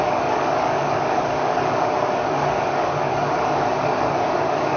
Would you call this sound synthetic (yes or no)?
yes